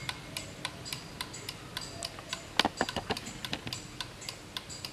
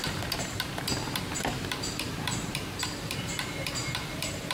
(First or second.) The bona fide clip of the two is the first